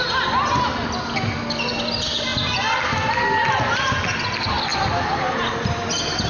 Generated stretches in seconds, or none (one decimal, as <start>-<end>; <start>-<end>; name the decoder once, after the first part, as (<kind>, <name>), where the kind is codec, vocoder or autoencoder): none